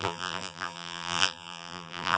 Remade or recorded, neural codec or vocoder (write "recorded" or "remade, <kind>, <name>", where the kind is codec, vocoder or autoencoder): remade, vocoder, BigVGAN v2